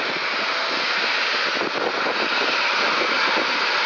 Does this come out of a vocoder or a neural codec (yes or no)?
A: no